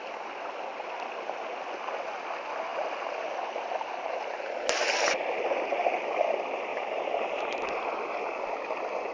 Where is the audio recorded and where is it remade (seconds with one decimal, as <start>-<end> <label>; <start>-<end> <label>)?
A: 0.0-6.7 recorded; 6.7-7.4 remade; 7.4-9.1 recorded